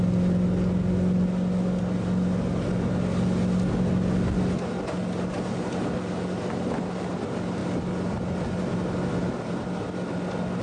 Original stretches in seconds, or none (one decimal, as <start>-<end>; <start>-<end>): 0.0-10.6